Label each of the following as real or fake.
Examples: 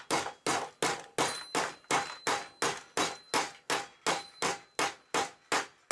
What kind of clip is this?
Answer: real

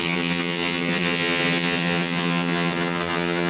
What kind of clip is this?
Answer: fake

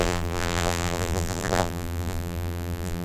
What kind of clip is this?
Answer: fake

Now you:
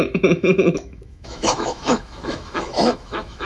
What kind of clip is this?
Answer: fake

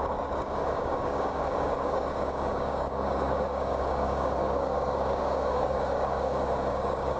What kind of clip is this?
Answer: fake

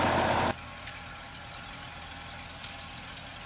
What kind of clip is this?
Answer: real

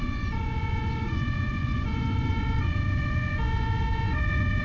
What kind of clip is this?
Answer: fake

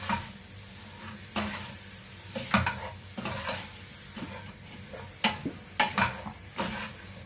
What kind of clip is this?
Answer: real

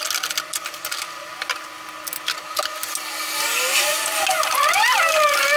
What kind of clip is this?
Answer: real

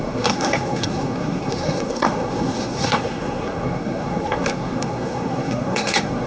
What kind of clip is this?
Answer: fake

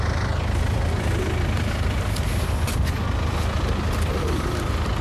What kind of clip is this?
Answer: real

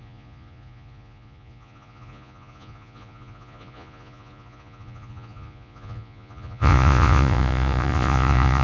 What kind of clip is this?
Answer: fake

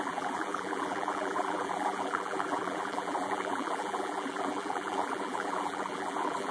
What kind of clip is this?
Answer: fake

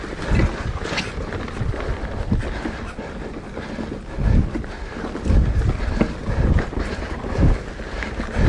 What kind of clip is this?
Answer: real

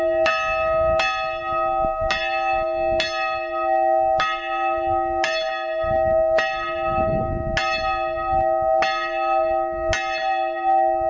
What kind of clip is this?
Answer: real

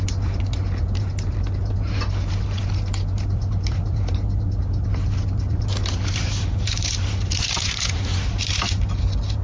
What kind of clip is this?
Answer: real